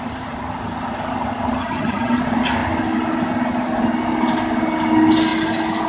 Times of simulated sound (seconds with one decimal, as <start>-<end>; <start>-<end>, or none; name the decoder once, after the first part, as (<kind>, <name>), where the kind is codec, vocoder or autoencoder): 1.6-2.2 (vocoder, HiFi-GAN)